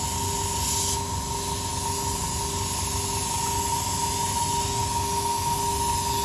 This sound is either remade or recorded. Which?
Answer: recorded